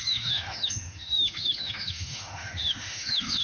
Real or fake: fake